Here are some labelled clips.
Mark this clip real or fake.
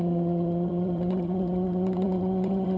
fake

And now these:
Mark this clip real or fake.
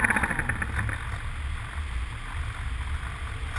real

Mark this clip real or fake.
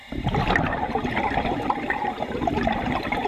fake